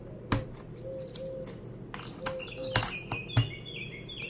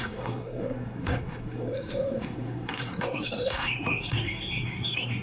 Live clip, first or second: first